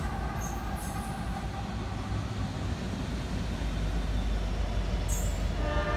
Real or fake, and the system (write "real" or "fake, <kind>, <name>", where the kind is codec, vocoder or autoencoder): real